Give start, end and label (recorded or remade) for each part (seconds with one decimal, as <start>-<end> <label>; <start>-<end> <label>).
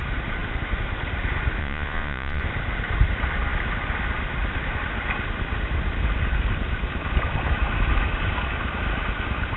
0.0-1.6 recorded; 1.6-2.4 remade; 2.4-9.6 recorded